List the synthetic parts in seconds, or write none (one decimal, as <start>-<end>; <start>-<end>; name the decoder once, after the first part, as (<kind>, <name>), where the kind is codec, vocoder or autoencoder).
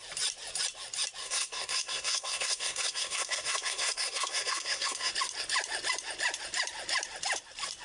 1.2-5.1 (codec, SNAC)